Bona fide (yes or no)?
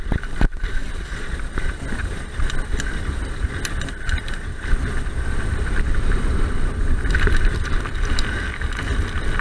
yes